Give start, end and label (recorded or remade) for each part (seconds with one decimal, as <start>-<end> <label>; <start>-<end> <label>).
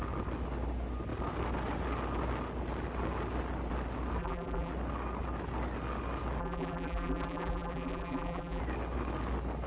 0.0-4.2 recorded; 4.2-4.7 remade; 4.7-6.4 recorded; 6.4-8.6 remade; 8.6-9.7 recorded